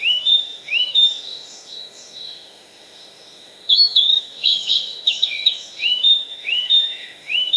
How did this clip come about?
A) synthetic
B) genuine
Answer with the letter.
A